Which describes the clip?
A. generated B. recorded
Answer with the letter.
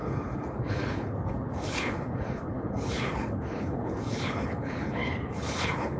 A